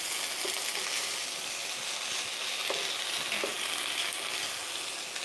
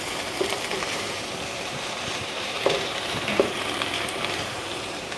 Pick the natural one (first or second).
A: first